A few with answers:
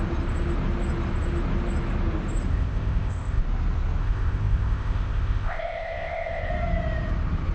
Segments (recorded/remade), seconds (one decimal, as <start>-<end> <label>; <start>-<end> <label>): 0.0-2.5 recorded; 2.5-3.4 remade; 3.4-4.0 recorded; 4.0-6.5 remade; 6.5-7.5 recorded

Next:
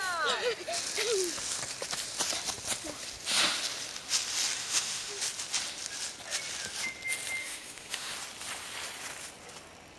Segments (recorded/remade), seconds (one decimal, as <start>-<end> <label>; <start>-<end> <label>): 0.0-4.6 recorded; 4.6-5.1 remade; 5.1-7.4 recorded; 7.4-8.1 remade; 8.1-10.0 recorded

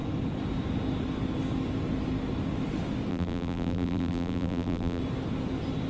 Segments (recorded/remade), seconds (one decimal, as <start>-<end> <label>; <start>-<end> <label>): 0.0-3.1 recorded; 3.1-5.0 remade; 5.0-5.9 recorded